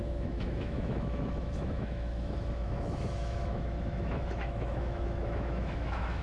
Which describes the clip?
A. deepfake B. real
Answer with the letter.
A